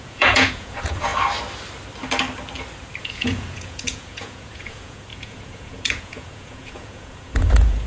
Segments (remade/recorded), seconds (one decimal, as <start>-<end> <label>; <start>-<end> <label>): 0.0-1.1 remade; 1.1-3.0 recorded; 3.0-7.9 remade